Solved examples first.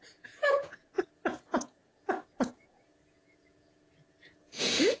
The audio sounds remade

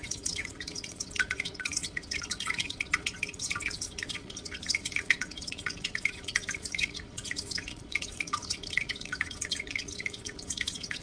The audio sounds remade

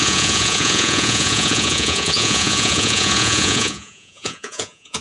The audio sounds remade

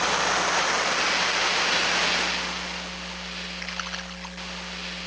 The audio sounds recorded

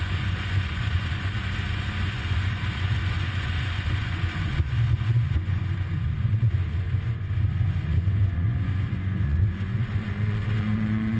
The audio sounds remade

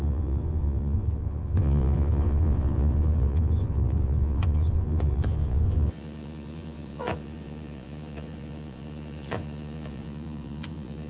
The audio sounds remade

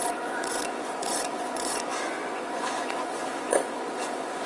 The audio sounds remade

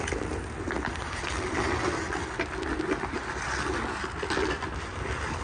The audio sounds recorded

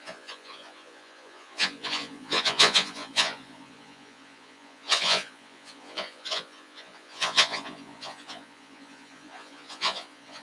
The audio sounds remade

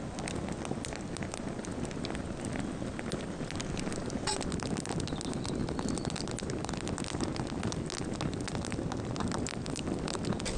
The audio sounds recorded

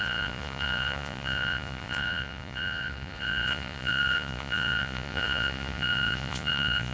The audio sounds remade